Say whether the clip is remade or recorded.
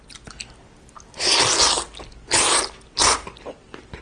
recorded